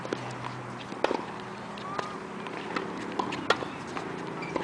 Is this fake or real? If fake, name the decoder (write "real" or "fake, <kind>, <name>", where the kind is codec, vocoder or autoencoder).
real